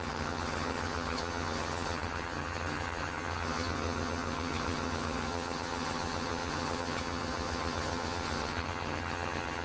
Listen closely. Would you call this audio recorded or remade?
remade